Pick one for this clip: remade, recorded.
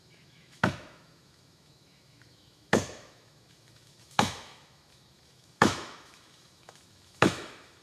remade